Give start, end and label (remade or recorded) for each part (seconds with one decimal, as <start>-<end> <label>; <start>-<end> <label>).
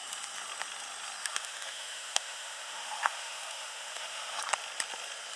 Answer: 0.0-1.2 recorded; 1.2-4.4 remade; 4.4-5.4 recorded